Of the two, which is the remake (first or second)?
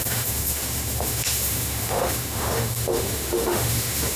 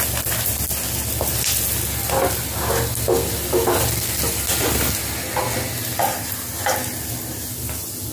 first